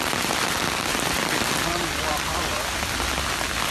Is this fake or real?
real